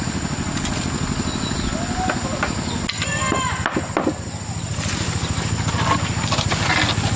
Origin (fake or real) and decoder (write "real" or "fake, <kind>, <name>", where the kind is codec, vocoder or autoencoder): real